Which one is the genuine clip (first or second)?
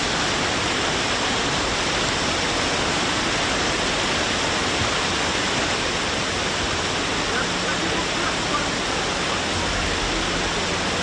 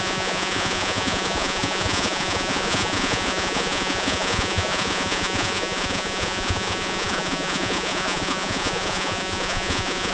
first